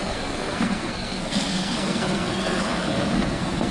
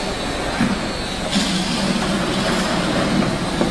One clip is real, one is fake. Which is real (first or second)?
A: second